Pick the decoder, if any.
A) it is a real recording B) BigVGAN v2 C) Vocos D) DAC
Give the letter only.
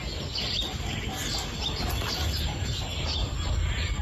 A